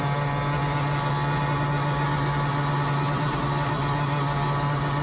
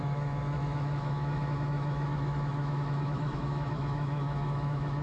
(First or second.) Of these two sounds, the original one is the first